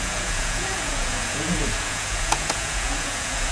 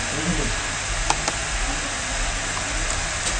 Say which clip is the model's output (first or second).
first